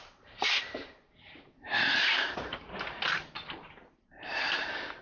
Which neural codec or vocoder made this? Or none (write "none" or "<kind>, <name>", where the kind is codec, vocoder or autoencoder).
vocoder, BigVGAN v2